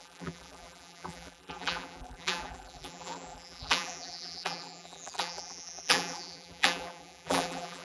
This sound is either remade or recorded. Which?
remade